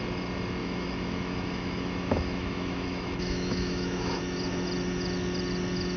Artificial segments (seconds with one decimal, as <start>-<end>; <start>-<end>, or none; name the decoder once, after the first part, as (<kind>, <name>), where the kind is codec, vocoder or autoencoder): 0.6-4.2 (autoencoder, DAC-VAE)